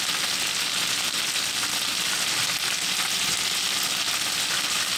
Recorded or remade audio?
recorded